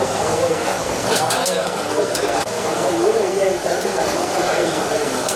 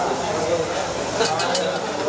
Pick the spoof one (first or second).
first